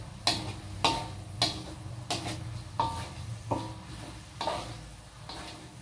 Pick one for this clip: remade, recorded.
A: recorded